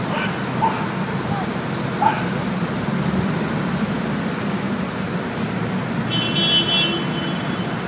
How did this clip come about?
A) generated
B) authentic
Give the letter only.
B